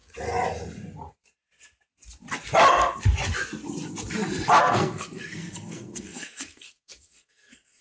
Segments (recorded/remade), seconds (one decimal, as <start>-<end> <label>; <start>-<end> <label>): 0.0-4.6 recorded; 4.6-7.8 remade